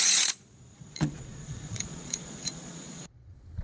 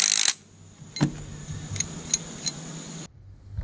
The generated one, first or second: first